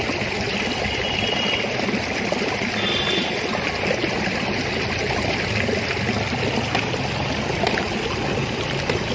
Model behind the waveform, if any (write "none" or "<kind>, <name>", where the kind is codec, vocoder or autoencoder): none